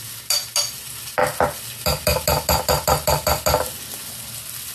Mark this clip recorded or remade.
recorded